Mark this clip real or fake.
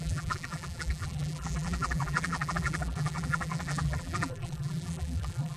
fake